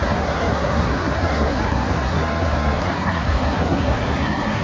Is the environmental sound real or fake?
fake